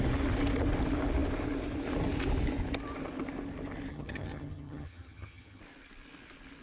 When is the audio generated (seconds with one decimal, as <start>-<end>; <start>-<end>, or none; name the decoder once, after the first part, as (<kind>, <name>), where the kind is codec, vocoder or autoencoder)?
3.9-5.6 (vocoder, HiFi-GAN)